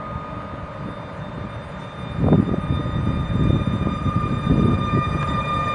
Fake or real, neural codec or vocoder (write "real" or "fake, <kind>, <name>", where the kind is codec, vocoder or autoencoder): real